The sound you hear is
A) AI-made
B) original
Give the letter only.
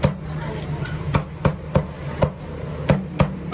B